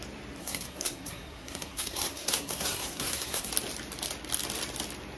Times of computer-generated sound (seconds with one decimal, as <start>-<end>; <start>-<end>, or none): 0.4-3.5